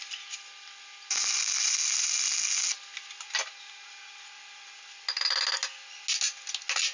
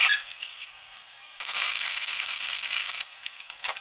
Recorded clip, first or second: first